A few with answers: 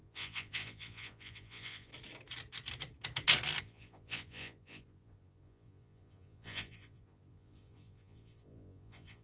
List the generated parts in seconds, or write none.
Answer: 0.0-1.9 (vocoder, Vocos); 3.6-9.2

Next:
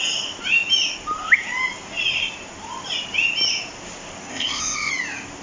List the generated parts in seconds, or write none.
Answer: 4.3-4.9 (codec, ZipCodec)

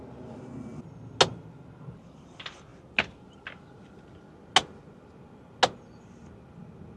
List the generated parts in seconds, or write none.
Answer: none